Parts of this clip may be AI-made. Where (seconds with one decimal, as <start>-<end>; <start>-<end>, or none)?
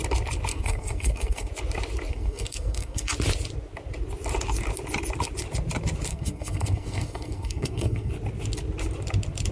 0.5-1.5; 2.1-3.1; 6.1-8.1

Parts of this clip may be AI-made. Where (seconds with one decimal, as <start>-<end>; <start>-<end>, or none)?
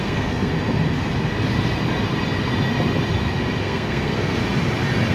0.0-0.5; 3.6-4.4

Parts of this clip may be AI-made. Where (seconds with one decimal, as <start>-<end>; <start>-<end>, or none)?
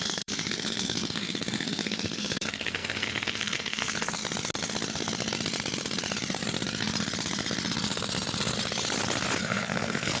0.0-4.2; 9.4-10.2